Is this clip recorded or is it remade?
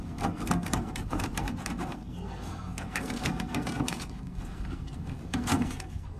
remade